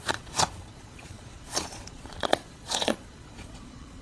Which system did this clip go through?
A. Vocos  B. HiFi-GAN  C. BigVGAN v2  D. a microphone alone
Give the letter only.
A